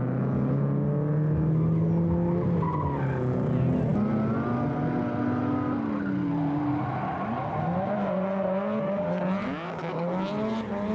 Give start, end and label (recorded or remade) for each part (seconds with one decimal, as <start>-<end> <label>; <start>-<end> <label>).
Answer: 0.0-9.4 recorded; 9.4-10.3 remade; 10.3-10.9 recorded